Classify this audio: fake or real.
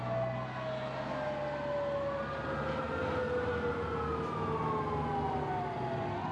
real